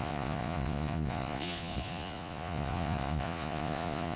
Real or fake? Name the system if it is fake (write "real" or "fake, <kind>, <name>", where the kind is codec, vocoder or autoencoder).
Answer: fake, vocoder, Vocos